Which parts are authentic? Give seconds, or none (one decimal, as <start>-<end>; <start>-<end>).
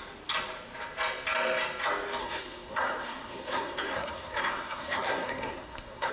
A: 0.0-2.2